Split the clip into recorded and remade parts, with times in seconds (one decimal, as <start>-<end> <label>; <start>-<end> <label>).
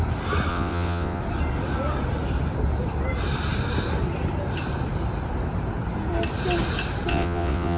0.0-0.5 recorded; 0.5-1.2 remade; 1.2-7.1 recorded; 7.1-7.8 remade